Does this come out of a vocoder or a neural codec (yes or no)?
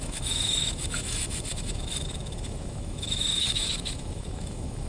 yes